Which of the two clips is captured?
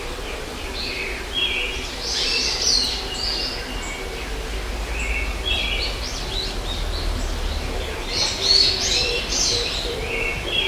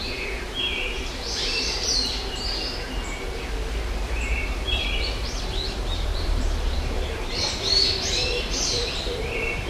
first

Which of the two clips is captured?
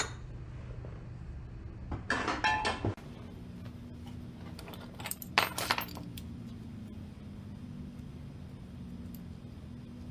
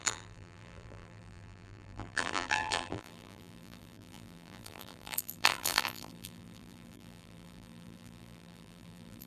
first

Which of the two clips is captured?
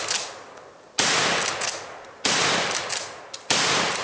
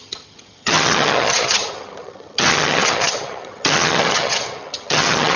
first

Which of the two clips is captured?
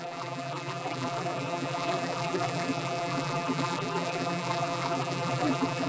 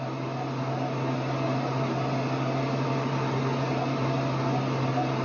second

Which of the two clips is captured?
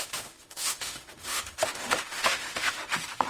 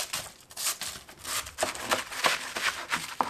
second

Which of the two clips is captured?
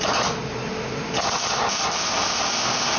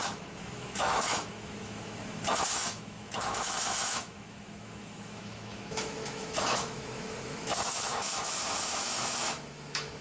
first